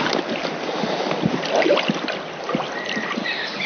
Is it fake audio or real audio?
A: real